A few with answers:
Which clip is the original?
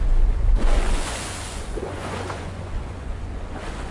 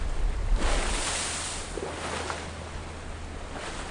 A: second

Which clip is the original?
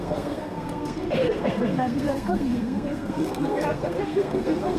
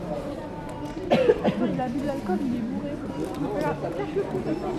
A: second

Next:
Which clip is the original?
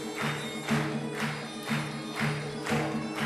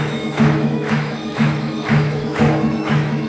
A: first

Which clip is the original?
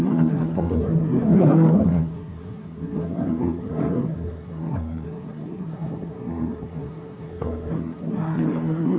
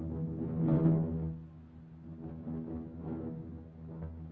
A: second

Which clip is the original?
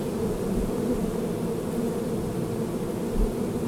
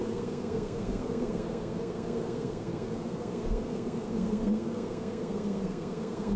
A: first